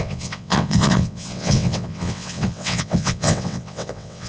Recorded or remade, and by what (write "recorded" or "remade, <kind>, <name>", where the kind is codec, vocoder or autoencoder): remade, vocoder, WaveNeXt